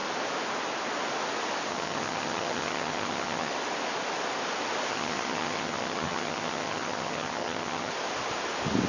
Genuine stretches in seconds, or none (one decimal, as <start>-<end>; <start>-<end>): 0.0-1.7; 3.5-4.9; 7.9-8.9